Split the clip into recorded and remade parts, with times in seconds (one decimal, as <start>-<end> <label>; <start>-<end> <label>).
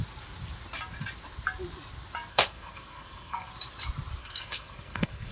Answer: 0.0-2.3 recorded; 2.3-3.5 remade; 3.5-4.2 recorded; 4.2-5.3 remade